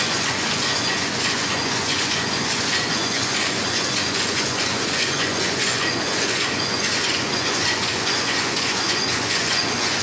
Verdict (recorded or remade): remade